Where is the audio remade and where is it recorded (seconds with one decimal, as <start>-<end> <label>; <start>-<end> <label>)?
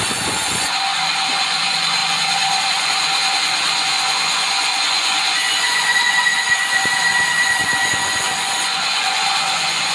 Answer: 0.0-9.9 remade